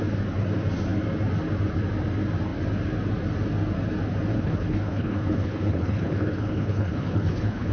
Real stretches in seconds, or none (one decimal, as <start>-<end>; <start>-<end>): 0.0-4.3